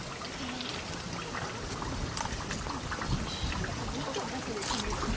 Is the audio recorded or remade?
recorded